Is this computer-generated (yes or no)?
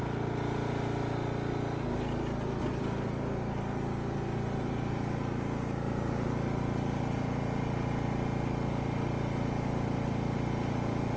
no